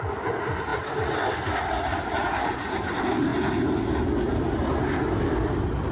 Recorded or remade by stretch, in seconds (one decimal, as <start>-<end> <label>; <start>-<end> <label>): 0.0-5.9 recorded